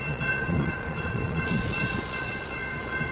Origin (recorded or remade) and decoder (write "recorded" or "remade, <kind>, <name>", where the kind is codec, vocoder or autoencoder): remade, vocoder, Vocos